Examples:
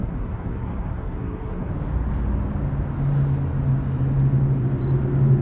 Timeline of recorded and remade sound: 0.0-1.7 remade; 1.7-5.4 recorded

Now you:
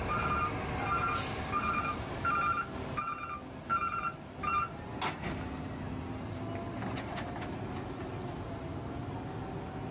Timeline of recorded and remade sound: 0.0-9.9 recorded

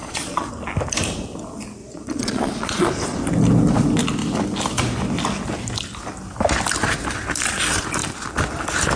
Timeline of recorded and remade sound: 0.0-0.5 remade; 0.5-1.8 recorded; 1.8-2.9 remade; 2.9-9.0 recorded

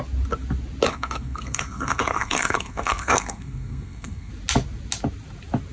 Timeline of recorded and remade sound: 0.0-0.9 recorded; 0.9-4.3 remade; 4.3-5.7 recorded